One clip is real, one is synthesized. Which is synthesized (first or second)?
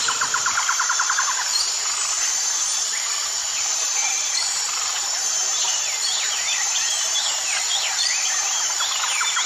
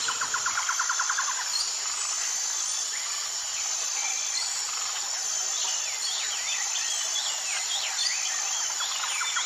first